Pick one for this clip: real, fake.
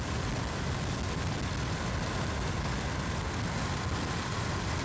real